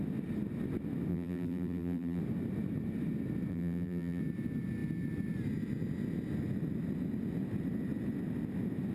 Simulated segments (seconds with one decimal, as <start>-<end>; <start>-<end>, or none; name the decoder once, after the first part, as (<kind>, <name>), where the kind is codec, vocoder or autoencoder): 1.1-2.2 (vocoder, BigVGAN v2); 3.5-4.2